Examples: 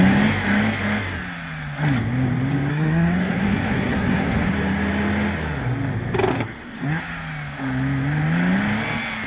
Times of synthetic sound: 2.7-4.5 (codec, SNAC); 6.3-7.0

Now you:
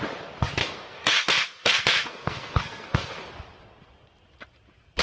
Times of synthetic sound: 0.6-3.3 (codec, SNAC)

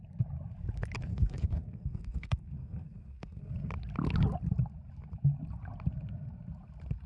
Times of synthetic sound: 1.1-3.5 (codec, SNAC)

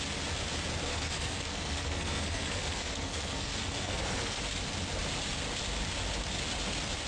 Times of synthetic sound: 0.9-4.4 (codec, SNAC)

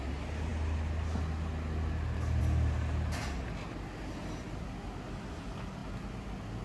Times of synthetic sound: none

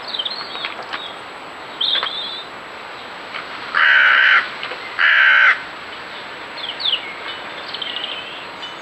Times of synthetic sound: none

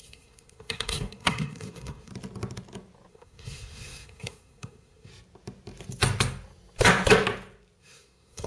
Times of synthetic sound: 0.0-2.1 (codec, SNAC); 3.1-5.1; 7.8-8.5